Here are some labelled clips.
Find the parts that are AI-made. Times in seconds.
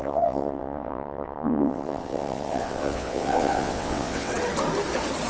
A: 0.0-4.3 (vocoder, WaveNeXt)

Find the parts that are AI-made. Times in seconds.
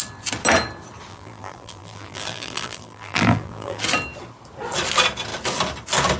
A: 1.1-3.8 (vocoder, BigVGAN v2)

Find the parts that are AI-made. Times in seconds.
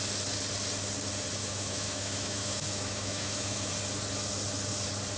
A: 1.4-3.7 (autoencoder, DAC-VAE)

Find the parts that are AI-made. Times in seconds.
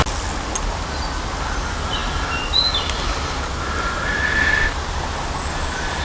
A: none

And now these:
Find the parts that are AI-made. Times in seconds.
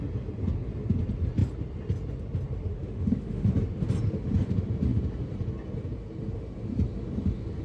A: 2.7-3.5 (autoencoder, DAC-VAE)